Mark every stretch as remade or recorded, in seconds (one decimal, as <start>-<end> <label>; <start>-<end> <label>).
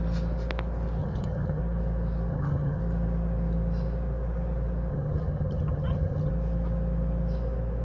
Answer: 0.0-1.0 recorded; 1.0-1.6 remade; 1.6-2.3 recorded; 2.3-2.8 remade; 2.8-4.9 recorded; 4.9-6.3 remade; 6.3-7.8 recorded